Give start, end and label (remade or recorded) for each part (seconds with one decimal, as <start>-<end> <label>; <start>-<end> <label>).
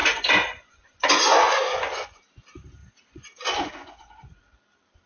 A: 0.0-2.2 remade; 2.2-2.8 recorded; 2.8-4.4 remade; 4.4-5.1 recorded